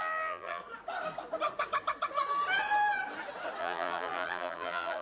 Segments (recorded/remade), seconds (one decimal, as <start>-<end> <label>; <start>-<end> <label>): 0.0-0.6 remade; 0.6-3.6 recorded; 3.6-5.0 remade